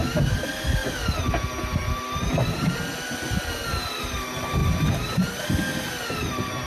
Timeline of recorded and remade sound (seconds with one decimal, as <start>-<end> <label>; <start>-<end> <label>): 0.0-6.7 recorded